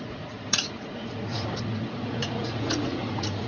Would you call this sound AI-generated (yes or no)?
yes